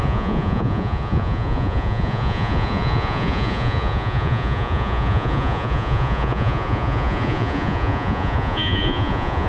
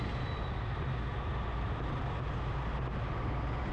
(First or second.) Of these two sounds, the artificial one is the first